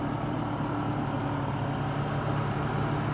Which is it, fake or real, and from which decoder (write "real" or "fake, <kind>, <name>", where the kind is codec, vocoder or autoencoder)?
real